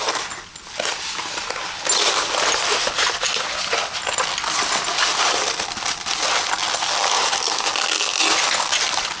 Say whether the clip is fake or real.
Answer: real